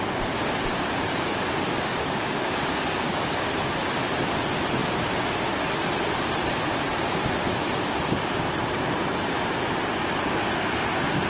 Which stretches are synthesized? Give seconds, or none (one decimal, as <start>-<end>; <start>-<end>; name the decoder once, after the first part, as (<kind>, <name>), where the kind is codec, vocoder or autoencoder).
1.9-3.5 (codec, DAC)